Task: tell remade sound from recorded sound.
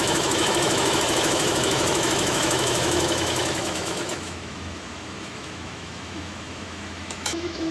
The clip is remade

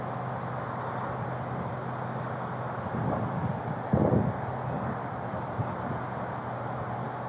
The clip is recorded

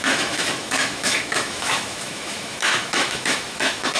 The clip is remade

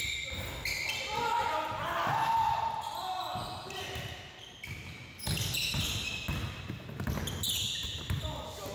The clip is recorded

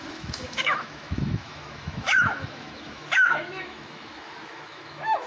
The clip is remade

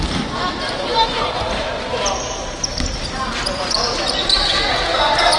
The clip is recorded